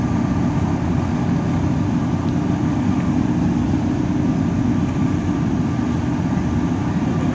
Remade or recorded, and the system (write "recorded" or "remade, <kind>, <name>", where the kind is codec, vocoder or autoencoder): recorded